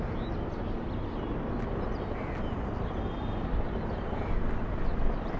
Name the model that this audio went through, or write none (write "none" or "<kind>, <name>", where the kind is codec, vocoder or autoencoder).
none